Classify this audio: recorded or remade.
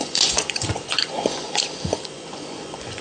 remade